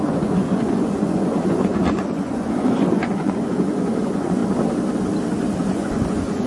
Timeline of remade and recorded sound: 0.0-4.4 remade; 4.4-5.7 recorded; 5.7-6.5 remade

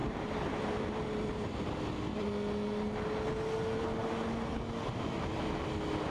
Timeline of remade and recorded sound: 0.0-1.5 remade; 1.5-6.1 recorded

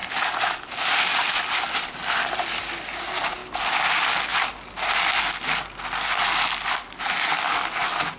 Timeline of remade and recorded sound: 0.0-4.3 recorded; 4.3-5.2 remade; 5.2-8.2 recorded